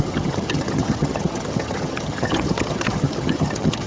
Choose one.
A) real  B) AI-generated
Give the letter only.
B